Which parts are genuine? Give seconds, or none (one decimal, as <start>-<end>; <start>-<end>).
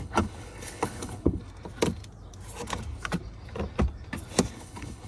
1.4-4.5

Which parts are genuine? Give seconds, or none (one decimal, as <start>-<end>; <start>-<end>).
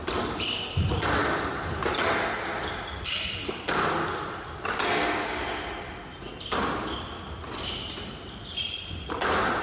0.0-9.6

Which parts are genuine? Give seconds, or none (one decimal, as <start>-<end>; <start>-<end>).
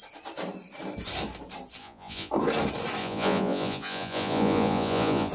0.0-1.8; 2.3-3.0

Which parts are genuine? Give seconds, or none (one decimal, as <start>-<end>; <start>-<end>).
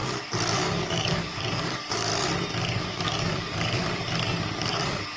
0.0-0.5; 2.1-2.8; 3.8-4.5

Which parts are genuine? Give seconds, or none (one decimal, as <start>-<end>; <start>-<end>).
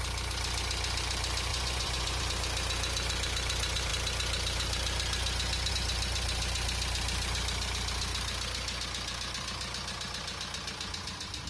0.0-1.5; 2.2-11.5